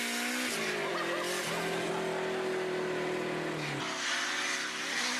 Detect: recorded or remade recorded